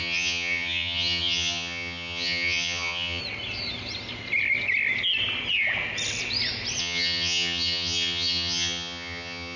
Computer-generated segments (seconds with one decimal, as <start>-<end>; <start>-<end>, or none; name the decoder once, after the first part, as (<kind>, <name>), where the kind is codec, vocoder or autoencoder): 0.0-3.2 (vocoder, HiFi-GAN); 6.8-9.6